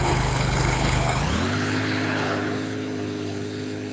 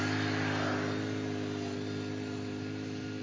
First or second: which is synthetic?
first